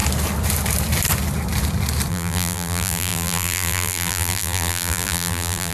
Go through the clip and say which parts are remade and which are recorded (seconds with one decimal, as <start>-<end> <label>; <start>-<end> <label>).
0.0-2.1 recorded; 2.1-5.7 remade